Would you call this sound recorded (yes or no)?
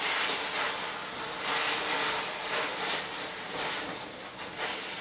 yes